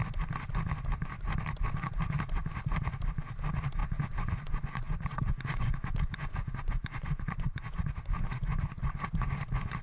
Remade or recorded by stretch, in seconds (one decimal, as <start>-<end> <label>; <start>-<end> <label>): 0.0-3.8 recorded; 3.8-7.8 remade; 7.8-8.3 recorded; 8.3-9.8 remade